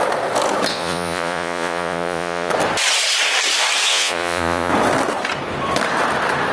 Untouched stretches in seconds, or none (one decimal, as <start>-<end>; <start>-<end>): 0.0-0.7; 2.5-3.9; 4.7-6.5